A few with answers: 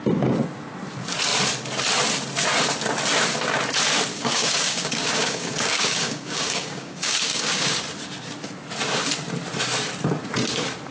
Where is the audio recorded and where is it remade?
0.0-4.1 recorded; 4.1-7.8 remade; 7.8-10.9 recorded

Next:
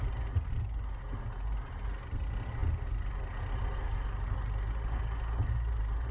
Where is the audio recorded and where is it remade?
0.0-6.1 recorded

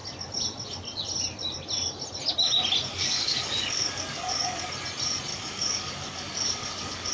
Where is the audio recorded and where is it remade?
0.0-2.9 recorded; 2.9-4.7 remade; 4.7-5.3 recorded; 5.3-7.1 remade

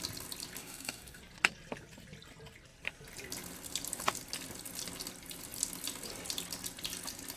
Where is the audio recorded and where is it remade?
0.0-0.6 recorded; 0.6-1.2 remade; 1.2-7.4 recorded

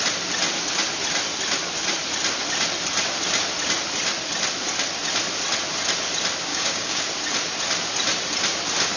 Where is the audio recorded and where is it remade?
0.0-6.5 recorded; 6.5-7.0 remade; 7.0-9.0 recorded